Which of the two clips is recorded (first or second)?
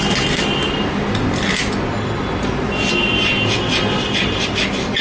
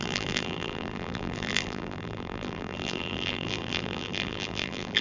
first